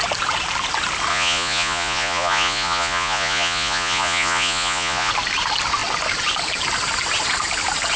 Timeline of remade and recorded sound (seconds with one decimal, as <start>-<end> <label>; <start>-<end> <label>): 0.0-1.1 recorded; 1.1-5.1 remade; 5.1-8.0 recorded